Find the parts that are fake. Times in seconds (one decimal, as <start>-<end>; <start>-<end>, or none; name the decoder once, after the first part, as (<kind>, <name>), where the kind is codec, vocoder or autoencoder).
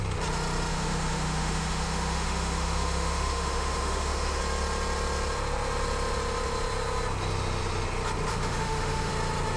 0.7-4.4 (autoencoder, DAC-VAE); 8.3-9.1